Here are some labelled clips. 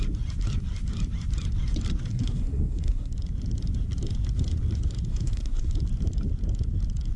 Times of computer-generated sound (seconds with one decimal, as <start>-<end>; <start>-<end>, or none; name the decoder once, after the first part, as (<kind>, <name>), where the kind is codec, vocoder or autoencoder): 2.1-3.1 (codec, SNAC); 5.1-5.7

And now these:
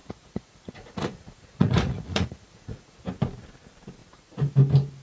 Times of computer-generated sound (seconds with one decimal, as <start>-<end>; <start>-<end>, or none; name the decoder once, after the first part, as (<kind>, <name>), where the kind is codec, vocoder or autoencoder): 0.0-3.0 (vocoder, Vocos); 4.0-4.5

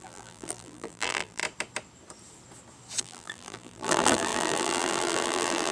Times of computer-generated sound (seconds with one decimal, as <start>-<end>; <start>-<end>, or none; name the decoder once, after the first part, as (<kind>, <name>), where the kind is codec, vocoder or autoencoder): 0.0-1.4 (vocoder, BigVGAN v2); 3.0-5.7

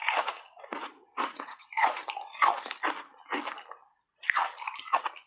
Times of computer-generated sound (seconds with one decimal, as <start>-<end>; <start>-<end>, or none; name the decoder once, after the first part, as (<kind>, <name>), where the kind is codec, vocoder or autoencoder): 0.0-2.0 (vocoder, Vocos)

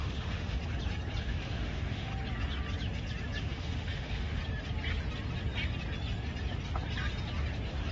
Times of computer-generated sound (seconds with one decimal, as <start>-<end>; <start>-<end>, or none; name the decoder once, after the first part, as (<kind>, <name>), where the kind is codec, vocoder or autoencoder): 0.0-0.6 (autoencoder, DAC-VAE); 1.2-2.1; 3.4-4.4